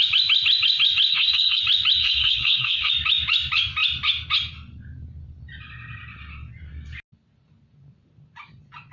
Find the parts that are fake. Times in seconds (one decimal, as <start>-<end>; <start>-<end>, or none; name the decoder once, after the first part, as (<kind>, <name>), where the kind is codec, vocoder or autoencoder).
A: 1.1-1.6 (codec, SNAC); 2.0-2.9